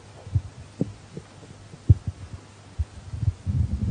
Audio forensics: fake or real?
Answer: real